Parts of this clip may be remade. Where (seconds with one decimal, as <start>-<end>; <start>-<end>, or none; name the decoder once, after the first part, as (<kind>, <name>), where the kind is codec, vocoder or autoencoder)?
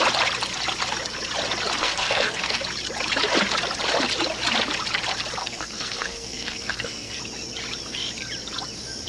1.8-2.6 (codec, SNAC); 5.4-7.2